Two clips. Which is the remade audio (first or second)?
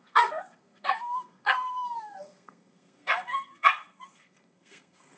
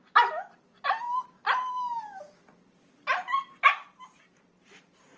first